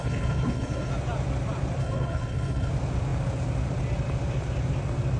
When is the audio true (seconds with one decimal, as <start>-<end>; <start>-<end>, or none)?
0.9-1.8; 2.7-5.2